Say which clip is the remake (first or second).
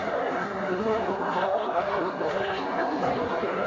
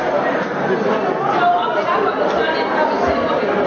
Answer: first